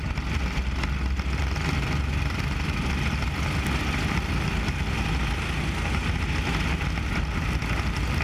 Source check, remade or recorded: recorded